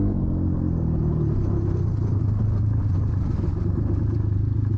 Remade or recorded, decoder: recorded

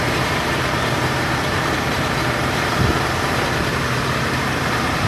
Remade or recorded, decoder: remade, vocoder, BigVGAN v2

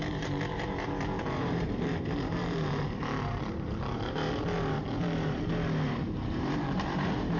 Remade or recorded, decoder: remade, vocoder, BigVGAN v2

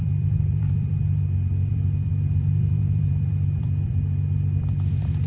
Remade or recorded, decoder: remade, vocoder, BigVGAN v2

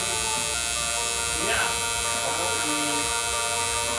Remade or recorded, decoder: recorded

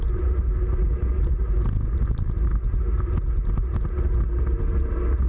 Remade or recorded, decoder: recorded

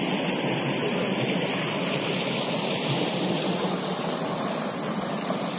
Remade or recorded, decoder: recorded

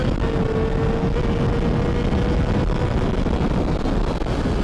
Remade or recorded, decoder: recorded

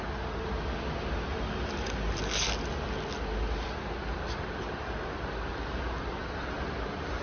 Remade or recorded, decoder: recorded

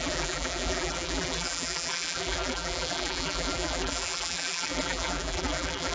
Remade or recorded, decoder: remade, vocoder, BigVGAN v2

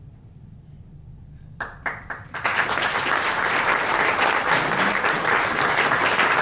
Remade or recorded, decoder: remade, vocoder, BigVGAN v2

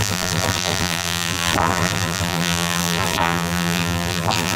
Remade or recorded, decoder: remade, vocoder, BigVGAN v2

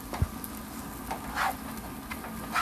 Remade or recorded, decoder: recorded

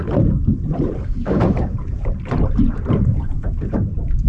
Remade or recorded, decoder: remade, vocoder, BigVGAN v2